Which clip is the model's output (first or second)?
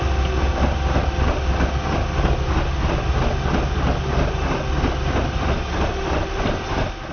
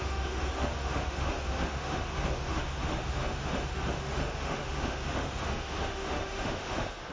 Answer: second